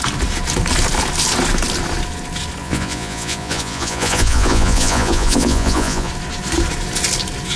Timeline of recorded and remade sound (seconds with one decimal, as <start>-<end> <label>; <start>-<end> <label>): 0.0-2.6 recorded; 2.6-6.1 remade; 6.1-7.6 recorded